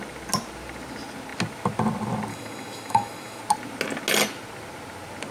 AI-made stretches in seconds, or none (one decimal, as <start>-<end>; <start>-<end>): 2.3-3.4